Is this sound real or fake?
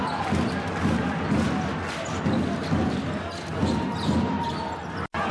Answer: real